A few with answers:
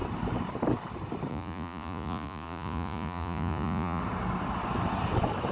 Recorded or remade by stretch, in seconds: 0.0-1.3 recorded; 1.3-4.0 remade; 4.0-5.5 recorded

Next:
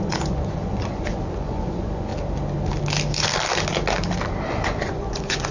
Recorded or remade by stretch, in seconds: 0.0-2.1 remade; 2.1-4.5 recorded; 4.5-5.5 remade

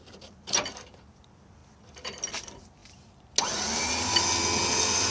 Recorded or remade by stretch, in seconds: 0.0-5.1 recorded

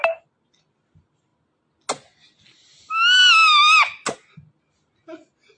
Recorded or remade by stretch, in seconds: 0.0-5.6 recorded

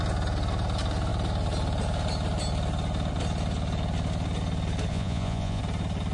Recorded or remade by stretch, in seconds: 0.0-4.9 recorded; 4.9-5.6 remade; 5.6-6.1 recorded

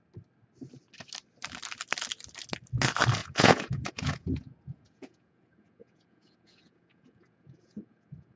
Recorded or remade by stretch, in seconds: 0.0-3.2 recorded; 3.2-8.4 remade

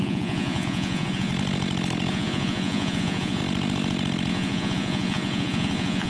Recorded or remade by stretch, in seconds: 0.0-1.3 remade; 1.3-2.1 recorded; 2.1-3.4 remade; 3.4-4.3 recorded; 4.3-6.1 remade